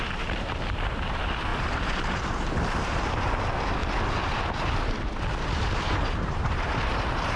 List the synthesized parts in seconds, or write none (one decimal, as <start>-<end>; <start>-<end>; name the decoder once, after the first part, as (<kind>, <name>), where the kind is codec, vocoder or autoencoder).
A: 0.0-3.8 (vocoder, BigVGAN v2); 5.8-7.4